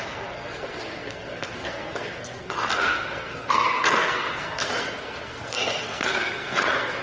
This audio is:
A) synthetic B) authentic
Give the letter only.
A